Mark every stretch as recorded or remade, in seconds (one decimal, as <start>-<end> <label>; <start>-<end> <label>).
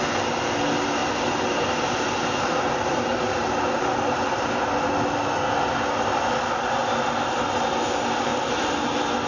0.0-1.0 recorded; 1.0-4.4 remade; 4.4-8.3 recorded; 8.3-8.8 remade; 8.8-9.3 recorded